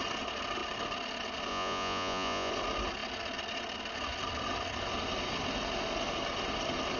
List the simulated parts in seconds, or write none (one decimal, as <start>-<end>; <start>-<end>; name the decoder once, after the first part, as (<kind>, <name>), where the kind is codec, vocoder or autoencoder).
1.5-2.5 (vocoder, Vocos)

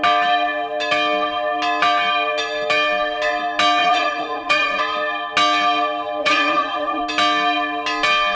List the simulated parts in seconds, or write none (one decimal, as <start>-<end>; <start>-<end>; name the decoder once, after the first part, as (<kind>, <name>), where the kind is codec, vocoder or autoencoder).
3.8-4.8 (vocoder, Vocos); 6.2-7.0